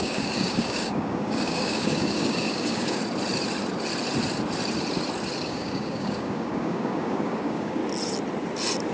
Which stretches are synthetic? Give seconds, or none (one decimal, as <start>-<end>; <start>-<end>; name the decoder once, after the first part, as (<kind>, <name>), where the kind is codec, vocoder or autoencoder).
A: 0.0-3.0 (codec, DAC); 5.4-7.8